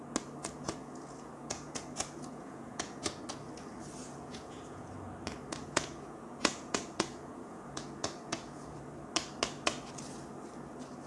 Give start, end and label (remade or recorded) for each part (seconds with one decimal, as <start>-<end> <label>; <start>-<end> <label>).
0.0-0.4 recorded; 0.4-3.2 remade; 3.2-4.0 recorded; 4.0-4.9 remade; 4.9-5.6 recorded; 5.6-8.8 remade; 8.8-11.1 recorded